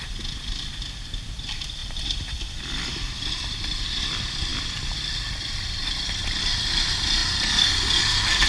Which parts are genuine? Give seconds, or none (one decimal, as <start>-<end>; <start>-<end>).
1.8-2.6